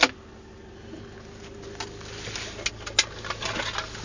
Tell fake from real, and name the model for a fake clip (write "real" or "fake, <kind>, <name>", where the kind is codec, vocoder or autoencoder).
real